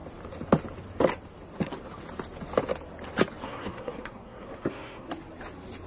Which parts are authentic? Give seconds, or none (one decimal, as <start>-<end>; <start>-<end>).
0.0-3.4; 5.1-5.9